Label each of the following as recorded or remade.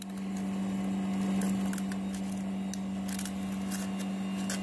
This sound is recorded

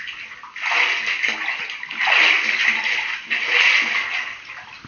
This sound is recorded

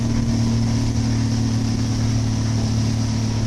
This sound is recorded